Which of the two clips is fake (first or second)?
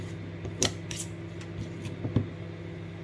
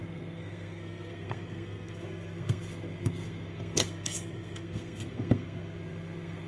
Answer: second